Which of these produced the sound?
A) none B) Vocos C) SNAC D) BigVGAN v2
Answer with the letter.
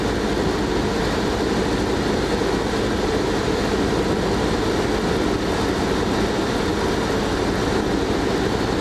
A